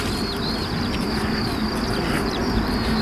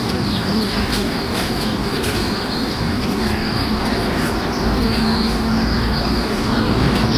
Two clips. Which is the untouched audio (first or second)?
first